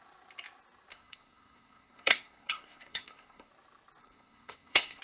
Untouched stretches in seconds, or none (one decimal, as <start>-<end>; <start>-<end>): 0.0-0.9; 3.5-4.0